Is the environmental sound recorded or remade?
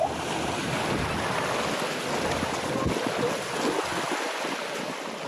recorded